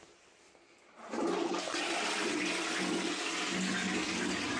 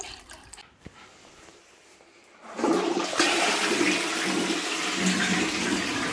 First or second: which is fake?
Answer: second